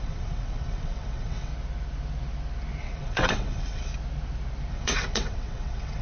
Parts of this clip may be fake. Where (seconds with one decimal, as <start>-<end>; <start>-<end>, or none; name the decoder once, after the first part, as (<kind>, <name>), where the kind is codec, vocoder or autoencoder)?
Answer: 0.0-1.5 (vocoder, WaveNeXt); 2.8-3.9; 4.7-6.0